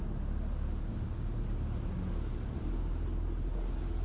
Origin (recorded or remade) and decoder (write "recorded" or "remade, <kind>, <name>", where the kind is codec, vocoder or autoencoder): recorded